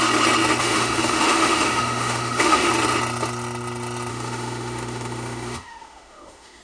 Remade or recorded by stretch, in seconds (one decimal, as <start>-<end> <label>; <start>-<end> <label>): 0.0-0.6 recorded; 0.6-2.7 remade; 2.7-4.1 recorded; 4.1-6.6 remade